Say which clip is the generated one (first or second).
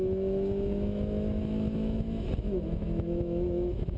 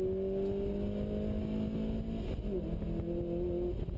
first